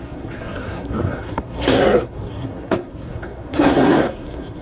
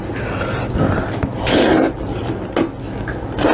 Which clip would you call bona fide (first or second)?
second